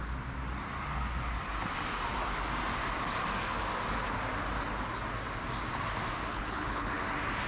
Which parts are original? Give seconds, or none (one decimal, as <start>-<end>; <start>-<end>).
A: 0.0-6.3; 6.9-7.5